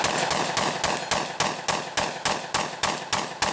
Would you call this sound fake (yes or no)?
no